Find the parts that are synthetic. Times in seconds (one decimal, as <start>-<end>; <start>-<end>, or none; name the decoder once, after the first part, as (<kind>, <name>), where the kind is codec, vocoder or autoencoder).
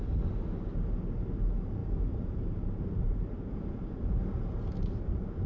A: 1.8-4.6 (vocoder, BigVGAN v2)